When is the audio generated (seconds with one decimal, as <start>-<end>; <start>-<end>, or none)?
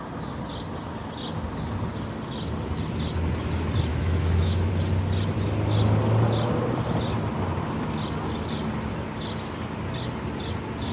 3.9-4.7